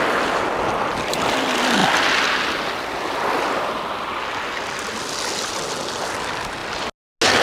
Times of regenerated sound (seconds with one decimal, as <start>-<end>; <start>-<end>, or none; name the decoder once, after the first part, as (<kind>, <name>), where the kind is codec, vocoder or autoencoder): none

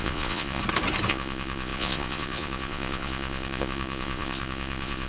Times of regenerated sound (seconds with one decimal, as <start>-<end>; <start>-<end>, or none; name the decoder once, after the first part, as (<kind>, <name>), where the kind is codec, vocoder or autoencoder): 0.0-0.6 (vocoder, Vocos); 1.1-5.1

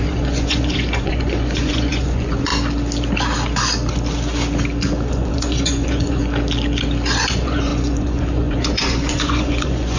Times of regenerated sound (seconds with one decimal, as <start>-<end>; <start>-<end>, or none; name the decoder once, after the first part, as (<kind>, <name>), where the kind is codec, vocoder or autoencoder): 0.0-2.5 (vocoder, Vocos); 5.1-6.2; 7.3-10.0

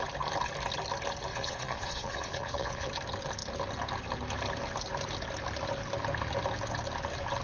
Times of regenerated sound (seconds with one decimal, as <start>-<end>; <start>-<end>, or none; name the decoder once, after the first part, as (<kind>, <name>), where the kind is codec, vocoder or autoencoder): 1.3-2.9 (vocoder, Vocos)